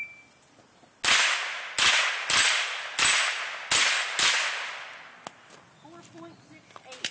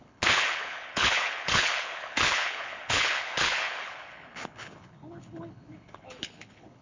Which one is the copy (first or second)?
second